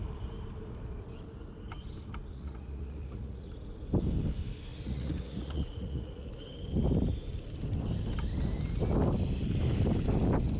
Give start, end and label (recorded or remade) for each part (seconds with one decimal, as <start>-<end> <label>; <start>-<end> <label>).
0.0-2.3 recorded; 2.3-3.5 remade; 3.5-4.7 recorded; 4.7-6.3 remade; 6.3-10.6 recorded

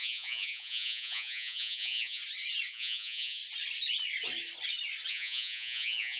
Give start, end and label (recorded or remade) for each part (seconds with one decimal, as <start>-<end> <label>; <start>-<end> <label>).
0.0-2.2 remade; 2.2-2.7 recorded; 2.7-3.4 remade; 3.4-5.1 recorded; 5.1-6.2 remade